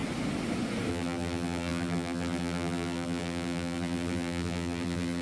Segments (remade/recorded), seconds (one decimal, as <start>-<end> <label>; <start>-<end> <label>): 0.0-0.9 recorded; 0.9-5.2 remade